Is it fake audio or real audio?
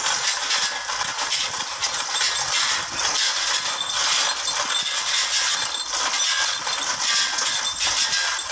real